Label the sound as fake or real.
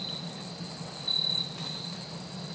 real